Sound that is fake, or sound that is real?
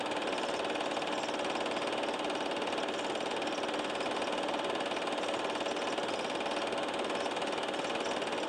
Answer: real